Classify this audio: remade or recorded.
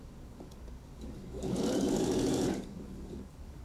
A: remade